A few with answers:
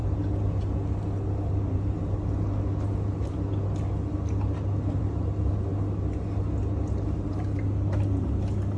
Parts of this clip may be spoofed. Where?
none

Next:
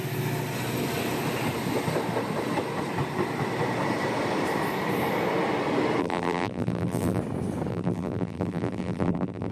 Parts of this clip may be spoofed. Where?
6.0-7.2 (vocoder, BigVGAN v2); 7.7-9.5

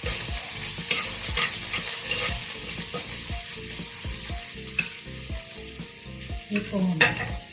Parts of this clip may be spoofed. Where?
none

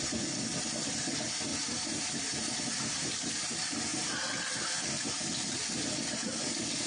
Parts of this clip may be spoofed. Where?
1.5-2.4 (vocoder, BigVGAN v2)

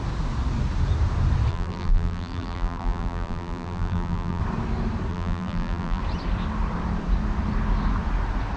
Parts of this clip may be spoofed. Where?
1.5-4.4 (vocoder, BigVGAN v2); 5.1-6.0

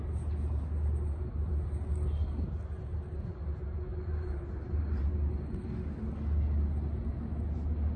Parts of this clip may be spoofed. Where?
3.9-5.1 (vocoder, BigVGAN v2)

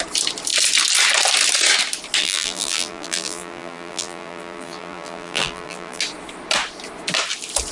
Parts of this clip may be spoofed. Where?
2.2-6.0 (vocoder, BigVGAN v2)

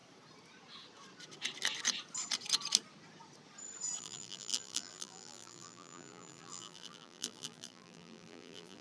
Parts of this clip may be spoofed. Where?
4.0-8.8 (vocoder, BigVGAN v2)